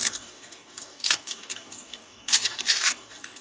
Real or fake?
fake